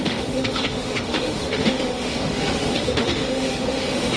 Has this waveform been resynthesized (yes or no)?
yes